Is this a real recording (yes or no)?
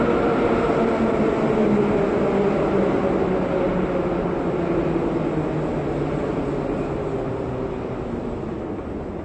yes